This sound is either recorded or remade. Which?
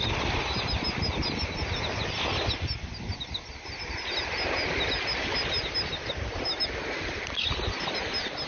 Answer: recorded